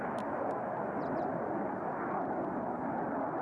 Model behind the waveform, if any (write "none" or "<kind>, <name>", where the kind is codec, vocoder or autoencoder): none